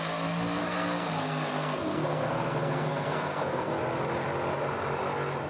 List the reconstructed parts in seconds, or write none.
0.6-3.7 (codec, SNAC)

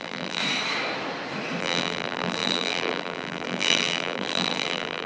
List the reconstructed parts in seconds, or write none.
0.0-0.4 (vocoder, BigVGAN v2); 1.6-5.1

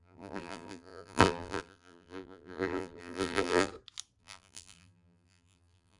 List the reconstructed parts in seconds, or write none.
0.0-3.7 (vocoder, BigVGAN v2); 4.2-6.0

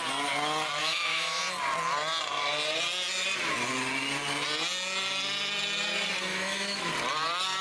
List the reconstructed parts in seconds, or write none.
0.8-1.4 (autoencoder, DAC-VAE); 6.3-6.9

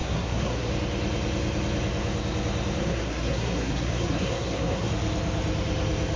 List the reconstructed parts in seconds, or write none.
0.0-0.7 (codec, SNAC); 2.8-4.9

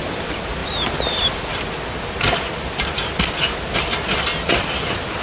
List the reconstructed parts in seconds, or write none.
none

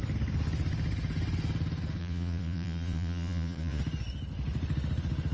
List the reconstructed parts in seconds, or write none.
2.0-3.8 (vocoder, Vocos)